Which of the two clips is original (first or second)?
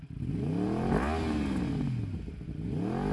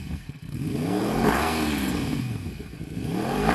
first